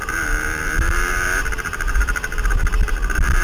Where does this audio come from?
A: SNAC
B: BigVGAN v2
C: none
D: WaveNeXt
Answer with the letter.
B